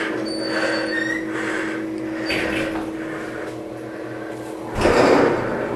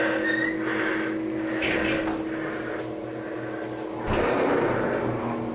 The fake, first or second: first